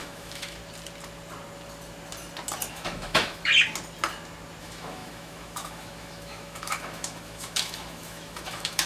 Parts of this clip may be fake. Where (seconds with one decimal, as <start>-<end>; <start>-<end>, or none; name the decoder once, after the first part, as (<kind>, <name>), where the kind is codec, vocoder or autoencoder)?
0.0-0.6 (autoencoder, DAC-VAE); 2.7-3.5; 4.6-8.9